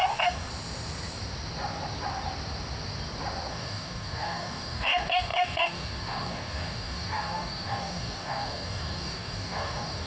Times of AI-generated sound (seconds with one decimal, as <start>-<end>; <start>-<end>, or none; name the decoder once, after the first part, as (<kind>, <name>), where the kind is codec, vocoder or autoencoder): 0.0-0.5 (codec, DAC); 3.5-10.1